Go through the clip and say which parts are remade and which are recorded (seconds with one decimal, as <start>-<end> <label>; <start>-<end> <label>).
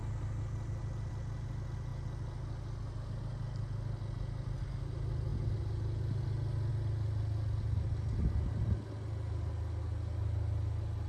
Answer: 0.0-11.1 recorded